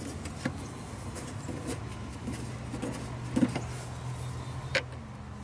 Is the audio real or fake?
real